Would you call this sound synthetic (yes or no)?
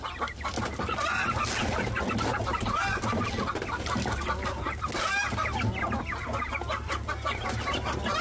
no